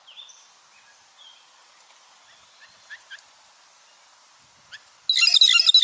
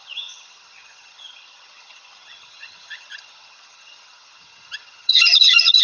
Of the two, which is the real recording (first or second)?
first